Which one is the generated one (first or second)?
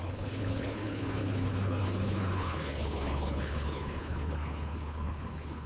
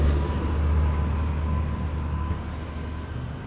first